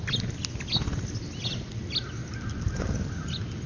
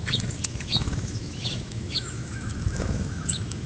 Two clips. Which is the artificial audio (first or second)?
second